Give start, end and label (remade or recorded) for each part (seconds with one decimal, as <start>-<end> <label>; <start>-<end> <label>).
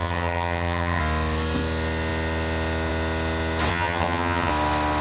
0.0-1.0 remade; 1.0-3.7 recorded; 3.7-4.5 remade; 4.5-5.0 recorded